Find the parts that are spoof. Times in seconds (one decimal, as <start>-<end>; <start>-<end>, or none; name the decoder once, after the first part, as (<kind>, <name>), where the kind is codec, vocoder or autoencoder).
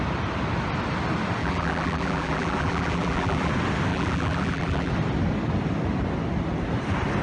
1.4-3.5 (vocoder, BigVGAN v2); 3.9-4.9